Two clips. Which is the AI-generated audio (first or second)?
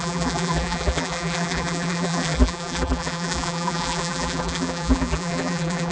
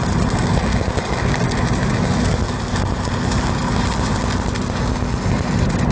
first